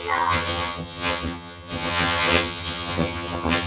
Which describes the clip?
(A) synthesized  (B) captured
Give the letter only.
A